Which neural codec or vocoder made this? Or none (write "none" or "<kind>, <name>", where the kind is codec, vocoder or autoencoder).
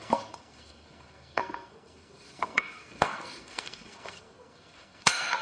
codec, SNAC